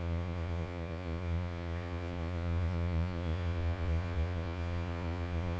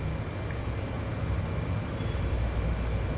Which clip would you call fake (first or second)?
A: first